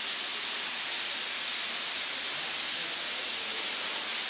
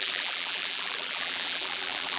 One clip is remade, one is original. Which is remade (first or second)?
second